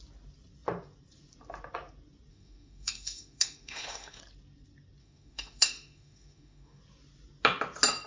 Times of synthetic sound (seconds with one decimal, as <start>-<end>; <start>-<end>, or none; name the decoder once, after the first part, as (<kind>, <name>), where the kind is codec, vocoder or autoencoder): 2.3-4.2 (autoencoder, DAC-VAE); 5.0-6.8